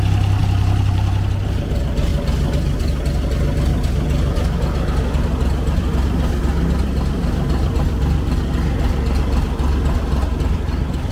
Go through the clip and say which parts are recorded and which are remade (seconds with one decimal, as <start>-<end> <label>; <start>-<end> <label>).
0.0-0.4 recorded; 0.4-1.1 remade; 1.1-10.2 recorded; 10.2-11.1 remade